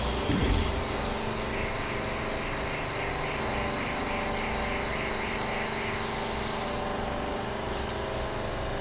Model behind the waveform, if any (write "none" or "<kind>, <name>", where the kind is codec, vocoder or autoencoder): none